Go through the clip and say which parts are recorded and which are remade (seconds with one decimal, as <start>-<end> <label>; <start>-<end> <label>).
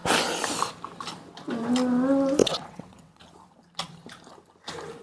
0.0-2.4 recorded; 2.4-3.2 remade; 3.2-5.0 recorded